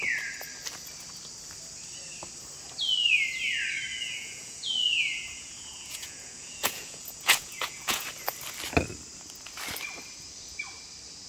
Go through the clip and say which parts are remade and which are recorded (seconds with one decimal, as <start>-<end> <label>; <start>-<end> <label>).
0.0-3.9 recorded; 3.9-8.1 remade; 8.1-11.3 recorded

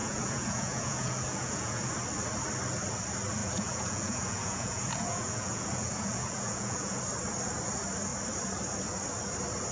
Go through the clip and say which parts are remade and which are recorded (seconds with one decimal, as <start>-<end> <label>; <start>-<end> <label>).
0.0-1.9 remade; 1.9-3.4 recorded; 3.4-7.0 remade; 7.0-9.7 recorded